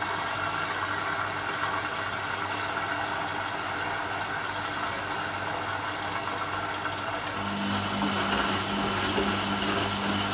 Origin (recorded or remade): recorded